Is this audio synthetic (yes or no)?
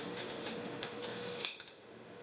yes